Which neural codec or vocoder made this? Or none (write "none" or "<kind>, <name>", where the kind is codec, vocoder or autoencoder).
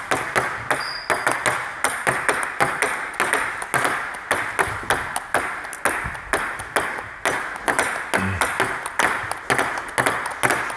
none